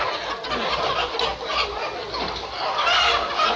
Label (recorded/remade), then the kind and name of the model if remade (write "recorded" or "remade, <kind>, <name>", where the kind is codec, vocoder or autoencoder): recorded